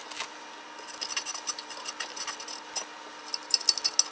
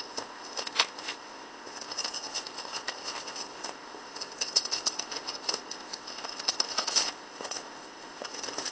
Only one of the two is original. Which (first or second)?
first